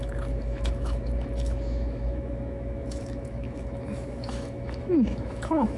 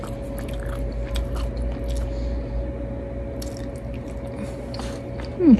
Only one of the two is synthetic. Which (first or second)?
first